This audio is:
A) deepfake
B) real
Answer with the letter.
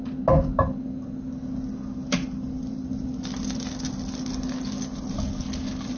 B